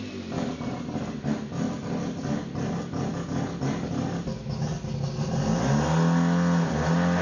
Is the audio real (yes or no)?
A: yes